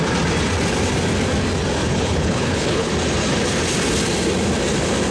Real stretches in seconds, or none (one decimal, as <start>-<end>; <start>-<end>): 0.0-1.8; 2.9-5.1